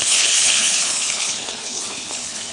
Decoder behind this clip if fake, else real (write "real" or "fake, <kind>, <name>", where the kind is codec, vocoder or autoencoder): fake, codec, HILCodec